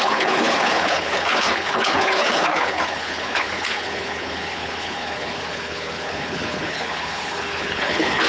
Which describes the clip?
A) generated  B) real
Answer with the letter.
A